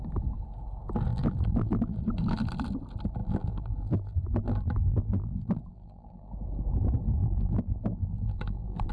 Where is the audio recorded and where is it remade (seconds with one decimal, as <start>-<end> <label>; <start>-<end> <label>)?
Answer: 0.0-1.1 recorded; 1.1-2.0 remade; 2.0-3.2 recorded; 3.2-6.3 remade; 6.3-7.2 recorded; 7.2-8.9 remade